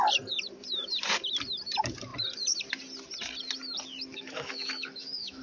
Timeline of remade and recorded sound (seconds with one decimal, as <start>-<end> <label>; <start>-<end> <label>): 0.0-4.1 recorded; 4.1-5.4 remade